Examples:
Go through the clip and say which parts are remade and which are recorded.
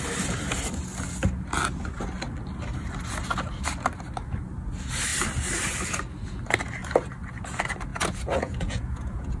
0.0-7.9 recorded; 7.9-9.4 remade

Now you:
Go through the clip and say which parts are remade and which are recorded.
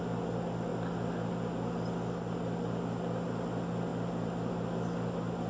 0.0-5.5 recorded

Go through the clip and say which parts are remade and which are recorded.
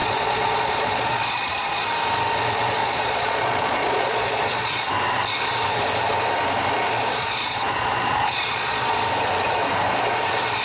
0.0-1.9 remade; 1.9-2.8 recorded; 2.8-4.9 remade; 4.9-7.1 recorded; 7.1-9.0 remade; 9.0-10.6 recorded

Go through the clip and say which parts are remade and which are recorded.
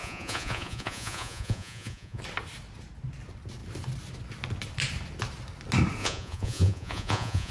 0.0-2.2 remade; 2.2-6.0 recorded; 6.0-7.5 remade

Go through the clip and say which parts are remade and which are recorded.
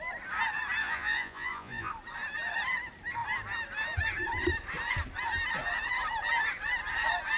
0.0-0.8 recorded; 0.8-1.9 remade; 1.9-7.4 recorded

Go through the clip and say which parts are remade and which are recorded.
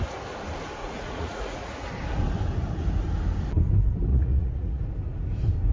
0.0-0.8 recorded; 0.8-1.9 remade; 1.9-4.1 recorded; 4.1-4.8 remade; 4.8-5.7 recorded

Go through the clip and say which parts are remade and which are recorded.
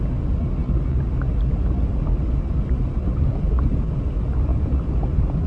0.0-5.5 recorded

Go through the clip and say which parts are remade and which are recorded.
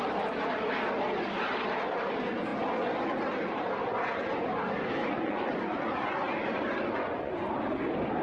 0.0-5.0 recorded; 5.0-7.3 remade; 7.3-8.2 recorded